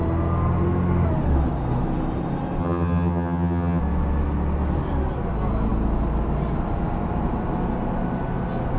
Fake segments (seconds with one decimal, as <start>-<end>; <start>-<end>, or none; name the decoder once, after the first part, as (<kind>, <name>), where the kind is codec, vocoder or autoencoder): 2.6-3.8 (vocoder, HiFi-GAN)